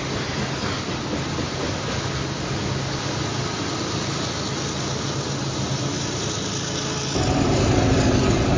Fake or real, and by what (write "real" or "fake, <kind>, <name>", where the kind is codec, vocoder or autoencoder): real